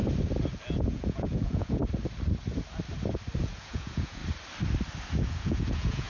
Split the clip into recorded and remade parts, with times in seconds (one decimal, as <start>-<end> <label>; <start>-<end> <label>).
0.0-0.9 recorded; 0.9-1.8 remade; 1.8-3.4 recorded; 3.4-4.2 remade; 4.2-5.2 recorded; 5.2-6.1 remade